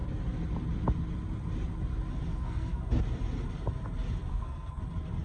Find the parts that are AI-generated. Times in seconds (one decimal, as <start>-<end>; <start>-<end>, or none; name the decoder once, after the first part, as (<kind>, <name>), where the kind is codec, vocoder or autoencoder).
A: 2.3-2.8 (codec, SNAC); 4.3-4.8